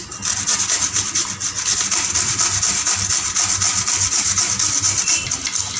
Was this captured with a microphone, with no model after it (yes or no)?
yes